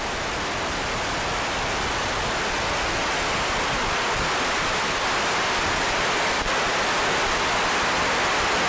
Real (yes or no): yes